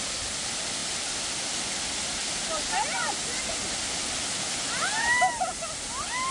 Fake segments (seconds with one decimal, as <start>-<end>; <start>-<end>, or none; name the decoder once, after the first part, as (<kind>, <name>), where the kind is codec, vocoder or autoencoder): none